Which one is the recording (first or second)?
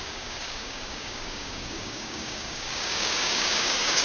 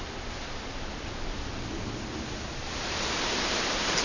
second